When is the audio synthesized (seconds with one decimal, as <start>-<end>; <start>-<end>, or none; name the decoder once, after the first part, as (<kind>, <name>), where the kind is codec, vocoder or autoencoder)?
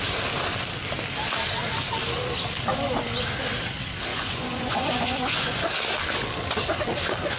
4.1-5.6 (vocoder, Vocos)